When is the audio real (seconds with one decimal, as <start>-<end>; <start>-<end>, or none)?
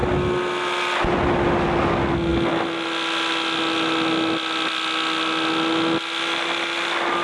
0.0-7.2